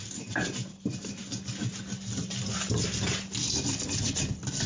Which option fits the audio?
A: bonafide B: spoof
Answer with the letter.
A